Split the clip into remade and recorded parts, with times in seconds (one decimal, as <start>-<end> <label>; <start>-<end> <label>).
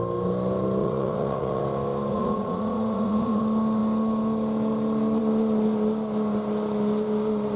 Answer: 0.0-0.8 recorded; 0.8-1.6 remade; 1.6-2.1 recorded; 2.1-3.4 remade; 3.4-7.6 recorded